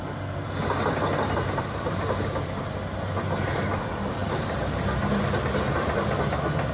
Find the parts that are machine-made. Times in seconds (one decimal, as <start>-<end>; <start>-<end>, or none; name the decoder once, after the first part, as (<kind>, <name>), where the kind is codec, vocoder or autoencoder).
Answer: none